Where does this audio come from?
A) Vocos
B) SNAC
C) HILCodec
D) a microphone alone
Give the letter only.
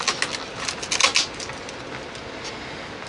D